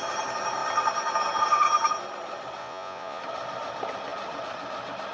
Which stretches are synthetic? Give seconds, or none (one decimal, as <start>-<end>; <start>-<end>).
2.6-3.2